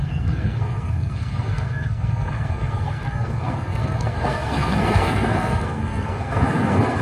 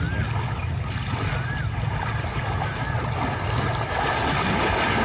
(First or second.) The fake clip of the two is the first